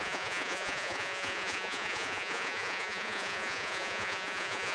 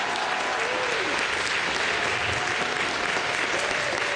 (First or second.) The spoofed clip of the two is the first